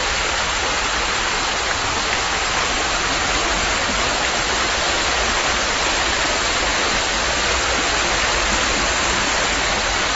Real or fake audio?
real